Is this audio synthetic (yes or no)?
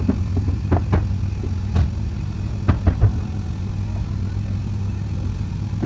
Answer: no